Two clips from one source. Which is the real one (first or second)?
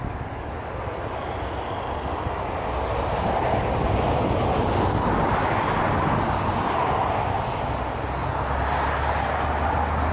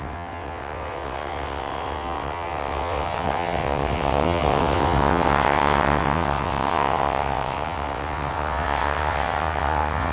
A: first